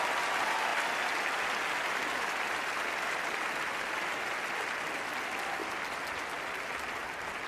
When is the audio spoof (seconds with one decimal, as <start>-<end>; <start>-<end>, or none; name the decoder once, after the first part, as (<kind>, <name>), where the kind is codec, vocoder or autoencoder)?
none

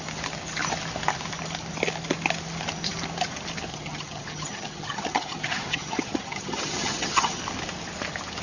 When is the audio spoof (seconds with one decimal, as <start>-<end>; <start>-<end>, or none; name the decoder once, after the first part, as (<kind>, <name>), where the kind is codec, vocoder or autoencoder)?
3.7-7.4 (vocoder, HiFi-GAN)

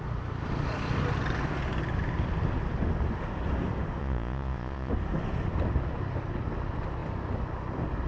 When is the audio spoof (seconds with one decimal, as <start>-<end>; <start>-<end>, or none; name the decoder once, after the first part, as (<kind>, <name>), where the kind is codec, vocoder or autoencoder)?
4.0-4.9 (vocoder, Vocos)

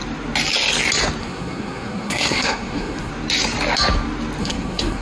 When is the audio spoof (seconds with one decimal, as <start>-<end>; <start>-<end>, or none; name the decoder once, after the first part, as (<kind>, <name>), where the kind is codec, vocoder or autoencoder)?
1.2-3.1 (codec, SNAC); 4.4-5.0

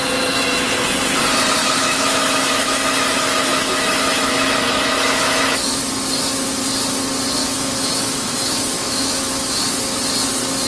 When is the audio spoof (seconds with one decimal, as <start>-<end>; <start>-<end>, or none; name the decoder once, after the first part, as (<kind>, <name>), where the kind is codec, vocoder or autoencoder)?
1.6-5.8 (autoencoder, DAC-VAE); 7.4-9.6

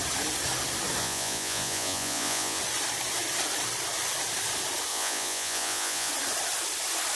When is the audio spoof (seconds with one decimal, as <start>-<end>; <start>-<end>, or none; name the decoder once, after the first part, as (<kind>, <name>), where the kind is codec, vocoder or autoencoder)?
1.0-2.6 (vocoder, Vocos); 4.9-6.1